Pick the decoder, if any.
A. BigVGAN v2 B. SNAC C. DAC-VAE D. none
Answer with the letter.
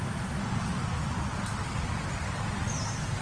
D